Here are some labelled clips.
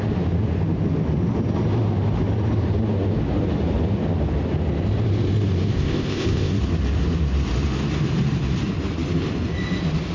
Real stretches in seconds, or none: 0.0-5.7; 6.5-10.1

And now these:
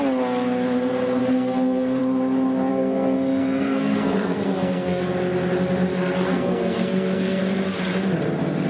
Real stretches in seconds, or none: 0.0-1.2; 2.0-2.7; 5.0-5.9; 7.4-8.7

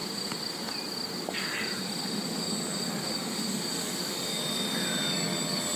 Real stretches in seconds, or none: 3.5-5.8

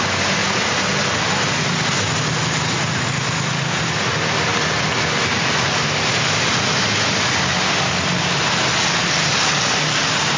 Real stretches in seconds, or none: 0.0-10.4